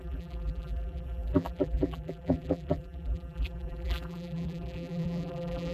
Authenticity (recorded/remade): remade